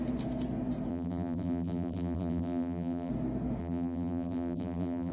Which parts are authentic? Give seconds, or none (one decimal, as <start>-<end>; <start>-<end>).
0.0-0.9; 3.1-3.6